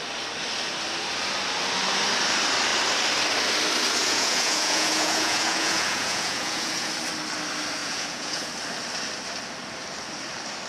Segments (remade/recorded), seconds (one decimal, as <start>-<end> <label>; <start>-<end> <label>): 0.0-4.0 recorded; 4.0-6.9 remade; 6.9-7.8 recorded; 7.8-8.5 remade; 8.5-10.7 recorded